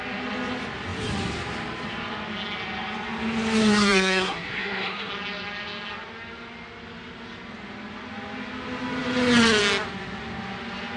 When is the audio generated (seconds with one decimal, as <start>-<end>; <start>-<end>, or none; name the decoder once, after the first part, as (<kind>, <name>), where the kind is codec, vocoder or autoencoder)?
3.6-5.1 (codec, SNAC)